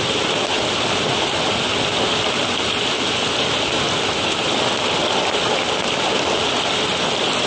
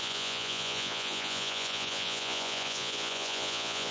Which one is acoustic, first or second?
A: first